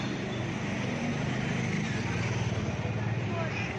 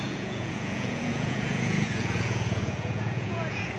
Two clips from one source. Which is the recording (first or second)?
first